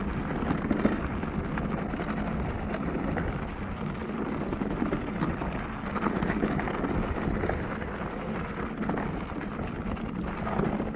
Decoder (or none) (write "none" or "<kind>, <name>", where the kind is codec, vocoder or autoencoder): none